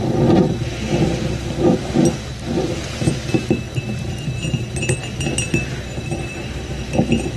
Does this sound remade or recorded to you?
recorded